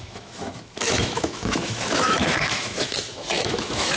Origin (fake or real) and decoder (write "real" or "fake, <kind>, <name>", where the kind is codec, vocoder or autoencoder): fake, autoencoder, DAC-VAE